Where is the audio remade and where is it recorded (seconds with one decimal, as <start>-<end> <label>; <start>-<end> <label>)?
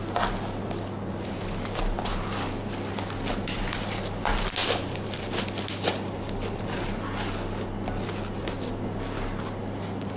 0.0-10.2 recorded